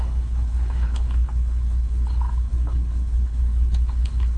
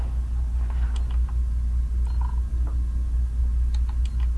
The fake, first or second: first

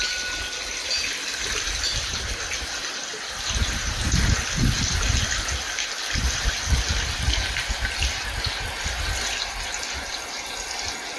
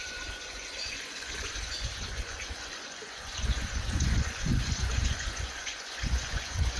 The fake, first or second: second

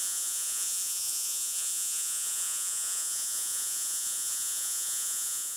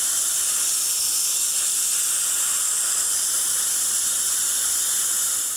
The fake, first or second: first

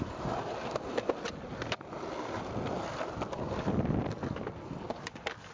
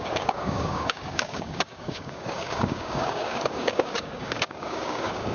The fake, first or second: second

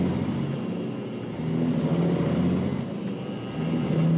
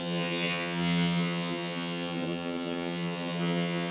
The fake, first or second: second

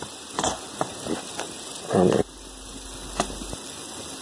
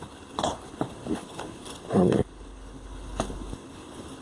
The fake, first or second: second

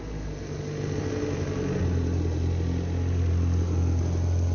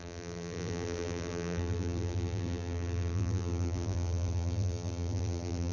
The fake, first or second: second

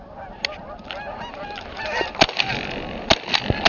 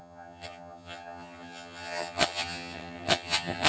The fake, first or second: second